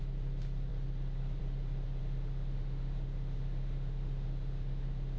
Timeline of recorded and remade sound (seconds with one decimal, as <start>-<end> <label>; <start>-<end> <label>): 0.0-2.0 recorded; 2.0-5.2 remade